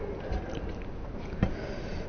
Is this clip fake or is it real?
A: real